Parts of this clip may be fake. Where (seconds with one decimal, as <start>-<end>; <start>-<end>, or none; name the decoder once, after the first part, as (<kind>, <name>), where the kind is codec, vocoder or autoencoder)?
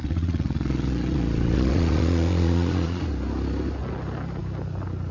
0.0-3.0 (vocoder, Vocos)